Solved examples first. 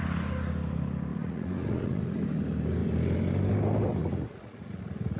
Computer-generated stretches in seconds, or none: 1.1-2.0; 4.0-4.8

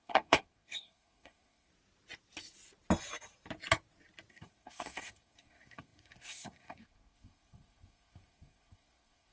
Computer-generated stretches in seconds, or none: 0.0-1.7; 4.3-9.3

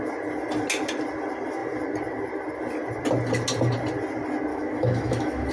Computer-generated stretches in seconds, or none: 4.5-5.5

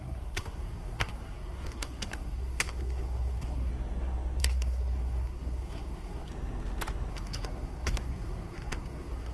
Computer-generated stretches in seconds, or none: 0.0-3.7; 4.4-6.3; 7.1-9.3

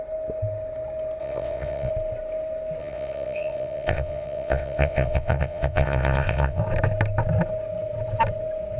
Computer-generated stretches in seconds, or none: 1.2-1.9; 2.8-6.6

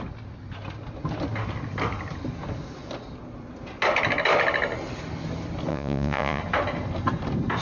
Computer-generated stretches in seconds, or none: 5.7-6.4

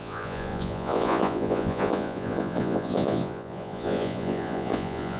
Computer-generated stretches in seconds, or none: 0.0-5.2